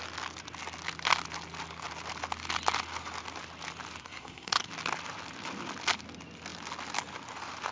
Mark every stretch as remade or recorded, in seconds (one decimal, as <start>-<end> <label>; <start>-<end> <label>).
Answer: 0.0-4.0 recorded; 4.0-4.7 remade; 4.7-7.7 recorded